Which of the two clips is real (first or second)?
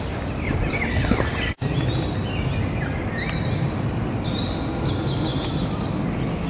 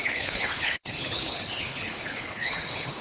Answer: first